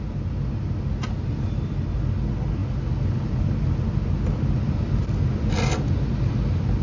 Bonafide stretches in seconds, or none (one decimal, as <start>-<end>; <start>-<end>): 0.0-6.8